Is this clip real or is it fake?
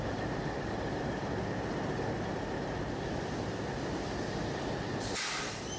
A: real